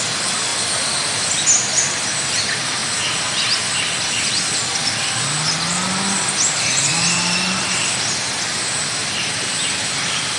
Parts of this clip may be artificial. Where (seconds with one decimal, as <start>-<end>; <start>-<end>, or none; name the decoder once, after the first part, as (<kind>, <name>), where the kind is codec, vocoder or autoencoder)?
none

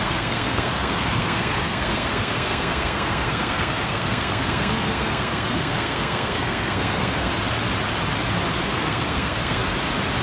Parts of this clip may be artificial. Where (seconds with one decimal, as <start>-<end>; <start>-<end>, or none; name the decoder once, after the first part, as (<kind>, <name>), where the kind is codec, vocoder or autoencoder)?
0.0-7.3 (codec, SNAC); 8.6-9.6

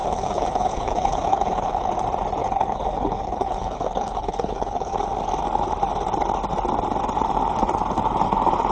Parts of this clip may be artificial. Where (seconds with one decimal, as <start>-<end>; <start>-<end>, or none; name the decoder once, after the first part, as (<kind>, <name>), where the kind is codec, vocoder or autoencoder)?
0.0-1.9 (codec, HILCodec); 2.4-4.9